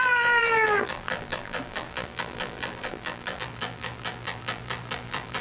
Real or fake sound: fake